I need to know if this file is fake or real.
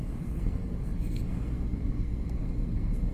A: fake